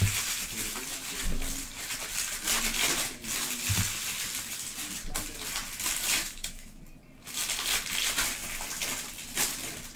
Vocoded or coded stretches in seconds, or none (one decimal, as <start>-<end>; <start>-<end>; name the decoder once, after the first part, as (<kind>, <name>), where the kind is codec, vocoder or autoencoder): 6.2-6.8 (autoencoder, DAC-VAE)